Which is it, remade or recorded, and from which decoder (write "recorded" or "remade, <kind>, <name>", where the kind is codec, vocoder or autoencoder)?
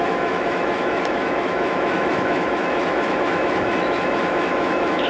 remade, autoencoder, DAC-VAE